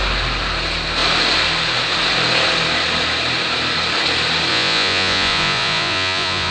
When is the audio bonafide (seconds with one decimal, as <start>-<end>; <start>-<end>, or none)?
0.0-4.5